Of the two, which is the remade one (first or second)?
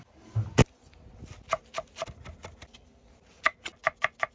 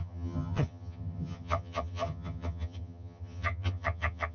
second